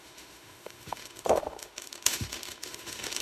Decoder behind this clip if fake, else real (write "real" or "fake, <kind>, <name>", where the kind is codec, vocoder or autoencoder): fake, autoencoder, DAC-VAE